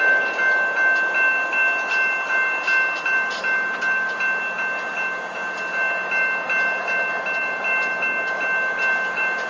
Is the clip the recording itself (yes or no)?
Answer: yes